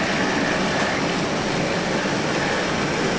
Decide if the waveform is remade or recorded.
recorded